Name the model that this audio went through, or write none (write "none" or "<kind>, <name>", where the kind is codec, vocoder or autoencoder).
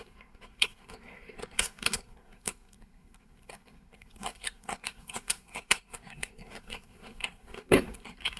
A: codec, SNAC